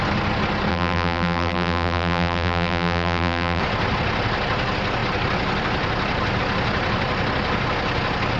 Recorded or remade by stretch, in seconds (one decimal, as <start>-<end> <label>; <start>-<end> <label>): 0.0-0.7 recorded; 0.7-3.6 remade; 3.6-8.4 recorded